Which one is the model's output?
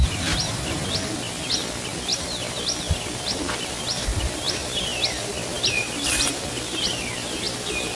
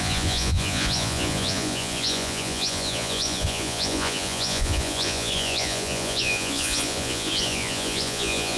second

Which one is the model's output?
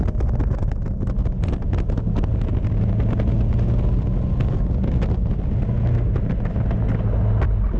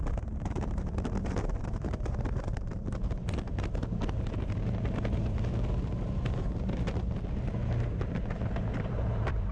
second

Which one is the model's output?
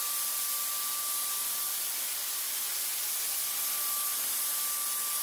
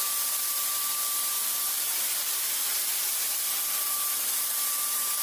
second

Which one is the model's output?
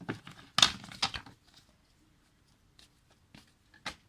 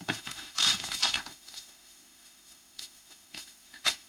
second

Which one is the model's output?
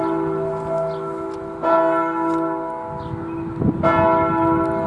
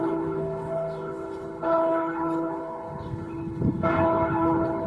second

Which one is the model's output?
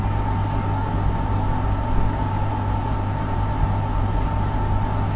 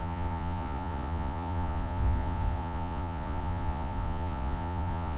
second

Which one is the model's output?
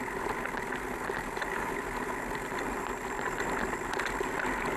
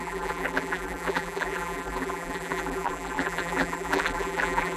second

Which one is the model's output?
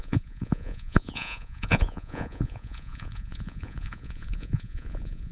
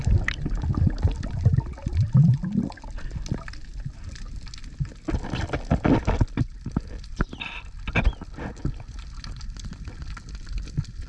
first